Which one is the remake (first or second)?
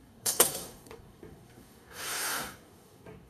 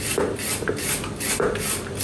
first